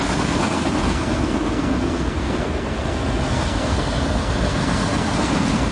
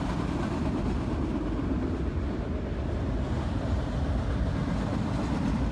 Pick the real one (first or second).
second